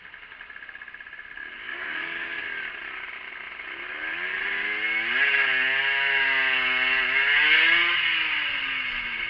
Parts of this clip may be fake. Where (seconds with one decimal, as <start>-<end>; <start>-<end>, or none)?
1.7-2.4